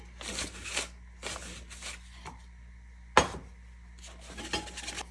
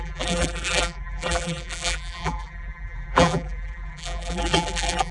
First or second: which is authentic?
first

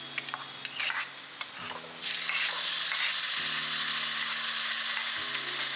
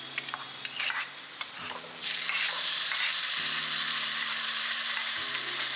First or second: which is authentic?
first